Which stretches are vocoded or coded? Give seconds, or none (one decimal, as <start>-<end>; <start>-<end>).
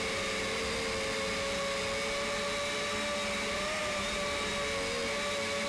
3.8-4.5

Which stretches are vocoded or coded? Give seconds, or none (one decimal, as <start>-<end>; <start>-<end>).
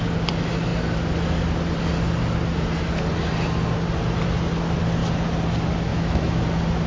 5.9-6.4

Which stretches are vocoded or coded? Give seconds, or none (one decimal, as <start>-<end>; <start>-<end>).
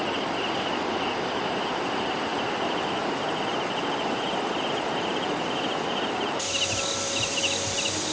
none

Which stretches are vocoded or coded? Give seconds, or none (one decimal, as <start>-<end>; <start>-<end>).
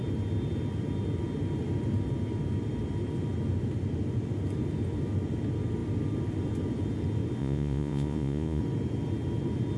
7.4-8.6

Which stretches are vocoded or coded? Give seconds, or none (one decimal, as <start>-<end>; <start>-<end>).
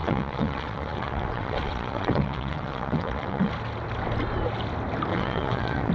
0.0-3.5; 5.1-5.9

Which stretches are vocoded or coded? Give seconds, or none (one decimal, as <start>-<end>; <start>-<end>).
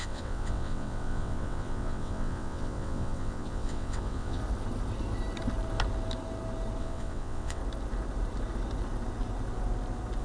0.0-4.4; 6.8-7.6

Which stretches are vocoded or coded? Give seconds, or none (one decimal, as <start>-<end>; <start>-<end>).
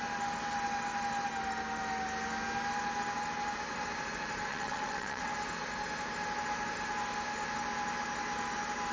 4.5-5.3